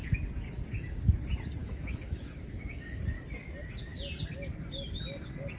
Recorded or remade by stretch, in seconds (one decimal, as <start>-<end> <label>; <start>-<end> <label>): 0.0-1.6 recorded; 1.6-3.0 remade; 3.0-5.6 recorded